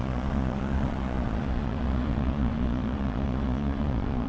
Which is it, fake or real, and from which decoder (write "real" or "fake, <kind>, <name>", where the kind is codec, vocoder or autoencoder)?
fake, vocoder, Vocos